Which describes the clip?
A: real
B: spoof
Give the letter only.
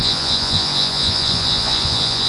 B